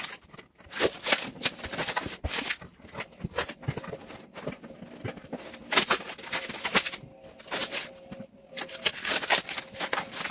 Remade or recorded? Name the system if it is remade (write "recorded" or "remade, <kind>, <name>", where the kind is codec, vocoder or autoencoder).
recorded